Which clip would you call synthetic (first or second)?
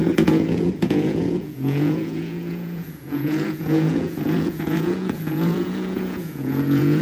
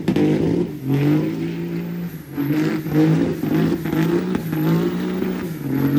first